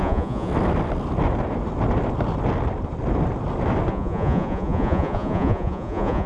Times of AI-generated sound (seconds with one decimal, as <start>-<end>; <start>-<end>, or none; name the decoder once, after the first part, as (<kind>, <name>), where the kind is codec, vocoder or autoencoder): 0.0-0.5 (vocoder, Vocos); 3.9-6.3